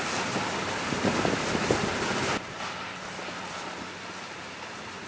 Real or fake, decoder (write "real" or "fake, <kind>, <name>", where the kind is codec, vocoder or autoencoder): fake, vocoder, BigVGAN v2